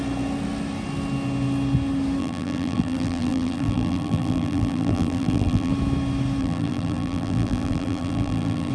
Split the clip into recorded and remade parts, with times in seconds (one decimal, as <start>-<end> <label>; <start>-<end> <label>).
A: 0.0-2.2 recorded; 2.2-5.7 remade; 5.7-6.4 recorded; 6.4-8.7 remade